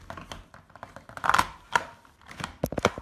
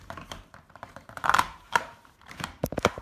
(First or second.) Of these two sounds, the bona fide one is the first